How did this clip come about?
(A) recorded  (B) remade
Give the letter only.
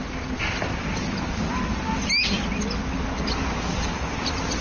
A